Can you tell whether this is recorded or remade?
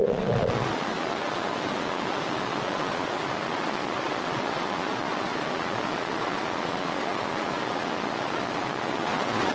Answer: remade